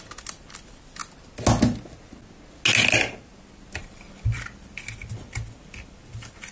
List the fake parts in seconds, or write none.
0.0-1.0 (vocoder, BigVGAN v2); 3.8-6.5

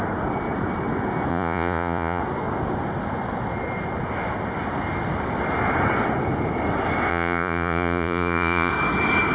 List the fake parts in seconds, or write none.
1.3-2.2 (vocoder, Vocos); 7.1-8.7